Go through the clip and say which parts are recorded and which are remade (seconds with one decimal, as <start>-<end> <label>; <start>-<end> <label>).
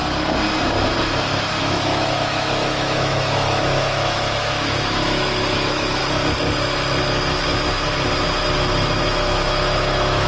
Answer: 0.0-1.6 recorded; 1.6-6.0 remade; 6.0-9.0 recorded; 9.0-10.3 remade